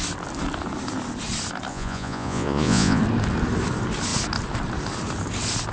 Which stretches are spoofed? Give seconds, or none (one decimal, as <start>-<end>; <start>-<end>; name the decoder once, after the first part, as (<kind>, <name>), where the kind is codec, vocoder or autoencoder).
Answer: 1.7-3.0 (vocoder, Vocos)

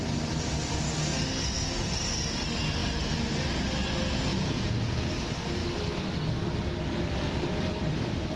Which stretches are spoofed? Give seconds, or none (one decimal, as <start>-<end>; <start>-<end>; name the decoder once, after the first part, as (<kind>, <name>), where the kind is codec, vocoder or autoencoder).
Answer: 4.3-5.0 (vocoder, Vocos)